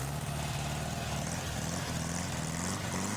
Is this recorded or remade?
recorded